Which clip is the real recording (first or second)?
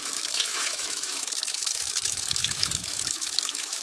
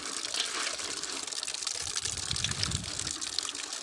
second